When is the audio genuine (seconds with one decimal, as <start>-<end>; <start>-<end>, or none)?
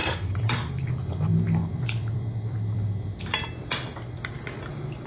0.9-1.6; 4.4-5.1